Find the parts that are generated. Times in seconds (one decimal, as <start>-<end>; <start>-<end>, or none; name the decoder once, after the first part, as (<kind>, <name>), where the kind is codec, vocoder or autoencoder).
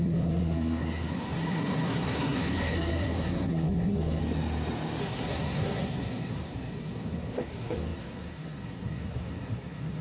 0.0-4.2 (codec, SNAC); 5.0-10.0